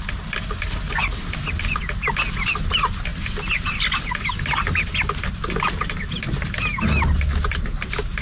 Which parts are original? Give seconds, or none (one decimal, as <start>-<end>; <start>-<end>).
0.0-8.2